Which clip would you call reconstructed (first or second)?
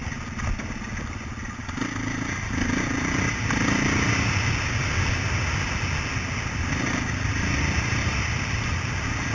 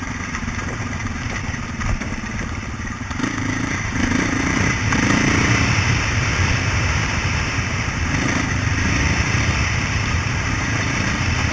second